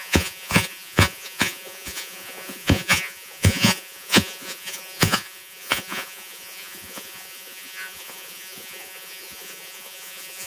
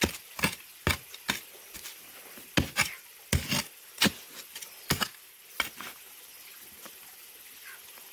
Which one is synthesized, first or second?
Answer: first